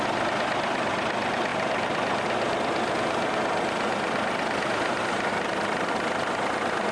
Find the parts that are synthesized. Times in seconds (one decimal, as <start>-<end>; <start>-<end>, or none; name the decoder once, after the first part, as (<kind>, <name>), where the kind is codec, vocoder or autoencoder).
none